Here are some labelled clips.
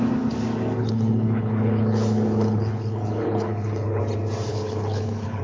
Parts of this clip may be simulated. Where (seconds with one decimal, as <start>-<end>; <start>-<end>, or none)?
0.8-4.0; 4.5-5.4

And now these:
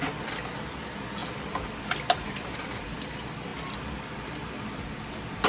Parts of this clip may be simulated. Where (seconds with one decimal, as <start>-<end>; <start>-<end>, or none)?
none

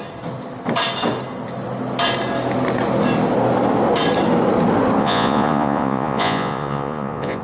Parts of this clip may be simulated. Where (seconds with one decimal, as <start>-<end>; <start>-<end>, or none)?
5.0-7.4

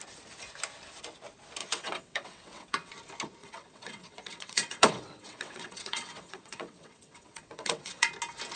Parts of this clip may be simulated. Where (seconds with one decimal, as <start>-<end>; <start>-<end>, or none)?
1.6-2.9; 3.4-8.1

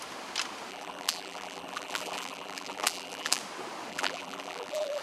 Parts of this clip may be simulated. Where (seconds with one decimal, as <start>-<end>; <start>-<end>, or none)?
0.7-3.4; 3.9-5.0

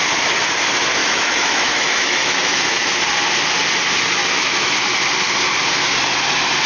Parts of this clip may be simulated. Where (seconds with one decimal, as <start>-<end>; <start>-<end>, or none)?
1.0-2.9; 4.2-4.7

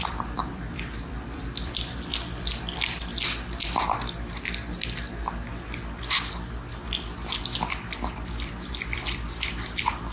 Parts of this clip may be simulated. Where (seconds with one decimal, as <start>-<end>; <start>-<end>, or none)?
0.0-2.1; 7.4-10.1

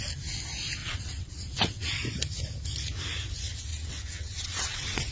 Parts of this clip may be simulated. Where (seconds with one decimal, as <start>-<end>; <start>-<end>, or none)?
0.8-1.9; 3.7-5.1